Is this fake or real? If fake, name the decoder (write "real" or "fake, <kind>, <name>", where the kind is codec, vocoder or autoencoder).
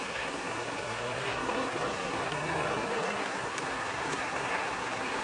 fake, codec, SNAC